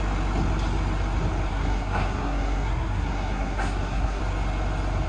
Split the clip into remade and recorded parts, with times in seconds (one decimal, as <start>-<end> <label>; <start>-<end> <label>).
0.0-1.5 recorded; 1.5-4.2 remade; 4.2-5.1 recorded